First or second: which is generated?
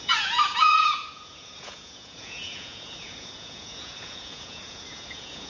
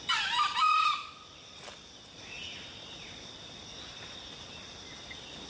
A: first